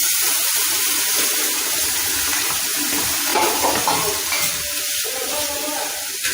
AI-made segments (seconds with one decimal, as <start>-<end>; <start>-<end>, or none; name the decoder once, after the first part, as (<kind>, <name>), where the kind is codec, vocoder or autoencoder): 2.3-2.8 (vocoder, BigVGAN v2); 3.3-5.1

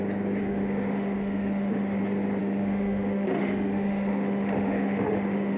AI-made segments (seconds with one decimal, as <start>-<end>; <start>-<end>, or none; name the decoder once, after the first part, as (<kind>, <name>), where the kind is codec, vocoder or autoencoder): 0.4-2.0 (autoencoder, DAC-VAE); 2.4-5.6

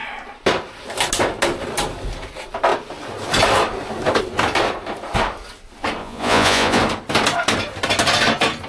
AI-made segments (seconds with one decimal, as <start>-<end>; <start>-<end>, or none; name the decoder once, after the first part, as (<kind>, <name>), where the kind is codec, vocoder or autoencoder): 6.0-6.8 (vocoder, Vocos)

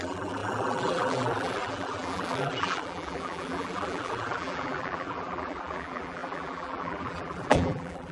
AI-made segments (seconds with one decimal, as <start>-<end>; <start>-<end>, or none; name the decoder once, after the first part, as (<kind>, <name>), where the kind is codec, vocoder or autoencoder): 0.0-8.1 (vocoder, BigVGAN v2)

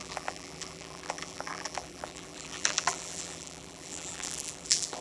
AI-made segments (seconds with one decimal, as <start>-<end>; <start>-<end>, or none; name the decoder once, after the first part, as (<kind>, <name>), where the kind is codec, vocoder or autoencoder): 0.0-5.0 (vocoder, BigVGAN v2)

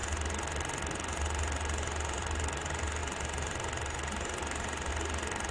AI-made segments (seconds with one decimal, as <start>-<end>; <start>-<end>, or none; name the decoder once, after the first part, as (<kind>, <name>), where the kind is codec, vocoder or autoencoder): none